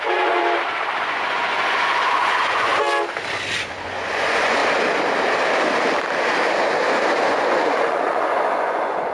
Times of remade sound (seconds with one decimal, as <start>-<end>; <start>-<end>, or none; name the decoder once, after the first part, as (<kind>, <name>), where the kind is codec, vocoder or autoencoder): 0.0-0.4 (vocoder, Vocos); 1.0-2.7; 3.8-4.6; 7.3-9.1